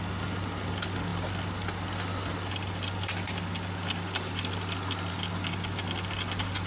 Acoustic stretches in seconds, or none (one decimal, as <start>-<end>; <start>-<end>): 0.0-6.7